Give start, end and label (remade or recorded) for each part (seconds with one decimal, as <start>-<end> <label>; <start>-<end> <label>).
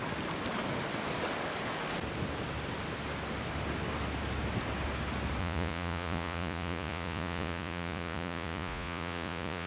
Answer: 0.0-5.4 recorded; 5.4-9.7 remade